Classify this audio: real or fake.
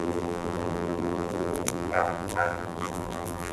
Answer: fake